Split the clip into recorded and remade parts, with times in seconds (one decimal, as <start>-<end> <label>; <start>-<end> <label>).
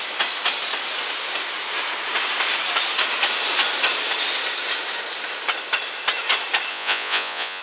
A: 0.0-6.7 recorded; 6.7-7.6 remade